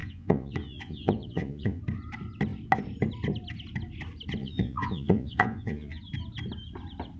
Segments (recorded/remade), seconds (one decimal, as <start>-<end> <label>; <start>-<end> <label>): 0.0-1.8 remade; 1.8-4.4 recorded; 4.4-6.0 remade; 6.0-7.2 recorded